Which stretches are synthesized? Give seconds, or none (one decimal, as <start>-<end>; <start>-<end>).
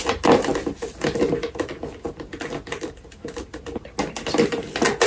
none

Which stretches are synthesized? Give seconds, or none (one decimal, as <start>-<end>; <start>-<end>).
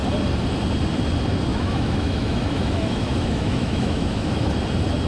1.5-4.5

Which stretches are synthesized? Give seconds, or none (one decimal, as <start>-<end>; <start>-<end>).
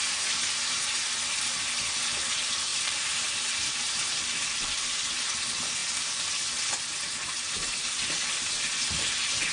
2.7-4.9; 5.8-6.3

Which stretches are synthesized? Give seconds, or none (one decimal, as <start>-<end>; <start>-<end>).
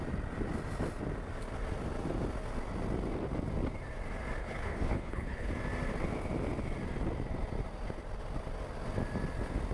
4.4-5.5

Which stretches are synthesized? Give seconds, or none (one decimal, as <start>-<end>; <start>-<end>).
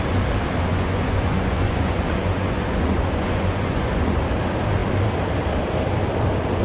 0.7-4.2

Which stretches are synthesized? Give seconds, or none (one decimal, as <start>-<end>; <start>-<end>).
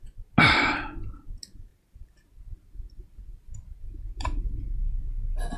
1.7-5.1